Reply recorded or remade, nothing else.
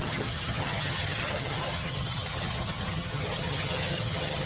remade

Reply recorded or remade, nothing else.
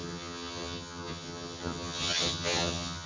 remade